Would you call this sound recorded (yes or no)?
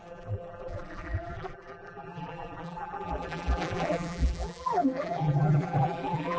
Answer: no